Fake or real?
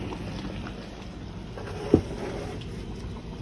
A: real